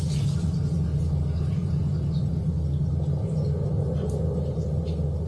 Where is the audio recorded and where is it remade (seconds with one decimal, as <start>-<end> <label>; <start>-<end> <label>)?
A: 0.0-5.3 recorded